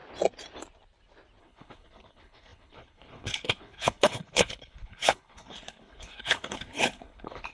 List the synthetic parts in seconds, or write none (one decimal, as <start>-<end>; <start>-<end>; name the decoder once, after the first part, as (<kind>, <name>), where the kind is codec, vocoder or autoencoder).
1.4-7.5 (codec, HILCodec)